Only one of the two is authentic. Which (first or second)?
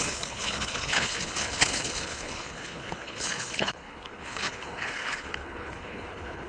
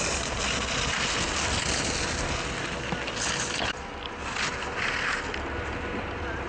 second